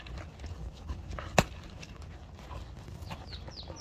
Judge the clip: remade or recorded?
recorded